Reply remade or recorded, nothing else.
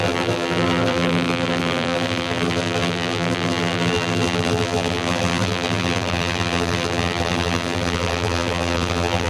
remade